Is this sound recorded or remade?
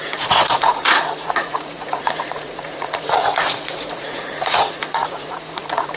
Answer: remade